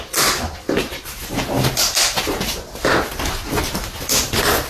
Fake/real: real